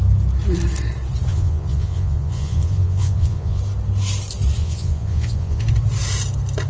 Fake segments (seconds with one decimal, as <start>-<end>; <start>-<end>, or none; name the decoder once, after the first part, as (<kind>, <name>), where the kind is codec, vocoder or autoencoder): 1.3-3.6 (vocoder, Vocos); 4.6-5.6